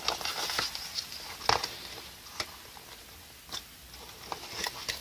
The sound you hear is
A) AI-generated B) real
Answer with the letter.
B